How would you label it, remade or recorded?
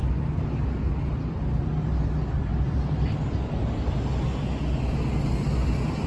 recorded